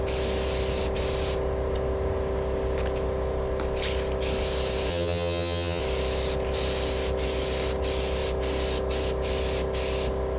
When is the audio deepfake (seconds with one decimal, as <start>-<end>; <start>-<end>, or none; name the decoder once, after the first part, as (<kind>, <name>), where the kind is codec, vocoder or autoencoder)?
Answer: 4.9-5.8 (vocoder, HiFi-GAN)